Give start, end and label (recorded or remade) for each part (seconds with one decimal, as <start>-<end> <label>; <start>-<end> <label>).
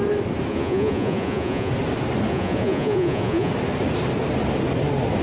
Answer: 0.0-0.5 recorded; 0.5-1.7 remade; 1.7-2.3 recorded; 2.3-3.5 remade; 3.5-5.2 recorded